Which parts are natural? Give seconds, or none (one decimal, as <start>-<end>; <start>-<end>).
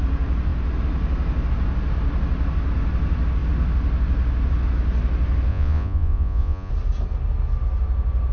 0.0-5.5; 6.7-8.3